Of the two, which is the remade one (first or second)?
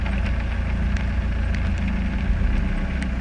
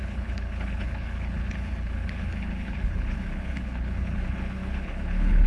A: second